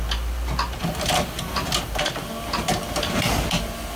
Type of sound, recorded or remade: recorded